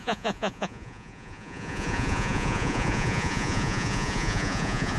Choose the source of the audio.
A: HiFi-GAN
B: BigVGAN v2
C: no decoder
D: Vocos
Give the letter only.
D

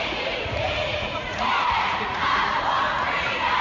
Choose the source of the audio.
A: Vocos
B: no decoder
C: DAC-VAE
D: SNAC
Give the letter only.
A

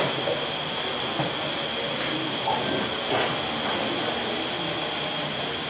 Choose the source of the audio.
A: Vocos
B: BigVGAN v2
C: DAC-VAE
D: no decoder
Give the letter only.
D